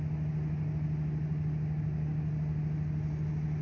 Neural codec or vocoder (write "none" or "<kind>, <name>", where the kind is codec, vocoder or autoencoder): none